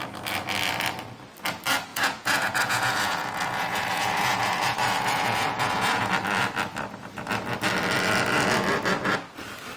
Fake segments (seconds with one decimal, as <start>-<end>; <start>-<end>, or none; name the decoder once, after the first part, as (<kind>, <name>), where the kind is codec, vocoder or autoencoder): 1.9-6.1 (vocoder, Vocos)